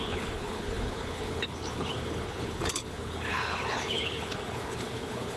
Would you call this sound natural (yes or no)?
no